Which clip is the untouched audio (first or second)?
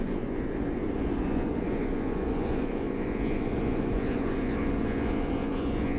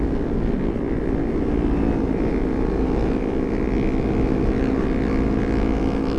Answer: second